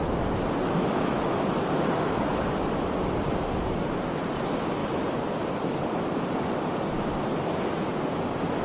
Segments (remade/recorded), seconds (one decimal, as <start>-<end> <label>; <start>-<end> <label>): 0.0-8.6 recorded